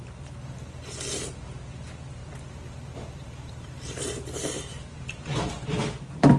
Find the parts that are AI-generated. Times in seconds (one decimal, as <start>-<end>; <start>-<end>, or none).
2.2-6.0